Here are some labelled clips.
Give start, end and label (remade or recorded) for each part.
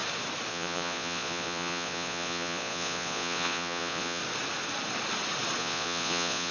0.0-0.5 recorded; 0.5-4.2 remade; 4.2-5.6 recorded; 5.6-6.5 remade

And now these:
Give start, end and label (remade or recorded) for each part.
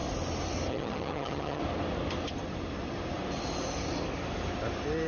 0.0-0.7 recorded; 0.7-1.6 remade; 1.6-5.1 recorded